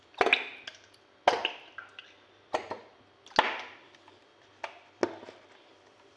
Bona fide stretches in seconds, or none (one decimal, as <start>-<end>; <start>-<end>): 0.0-6.2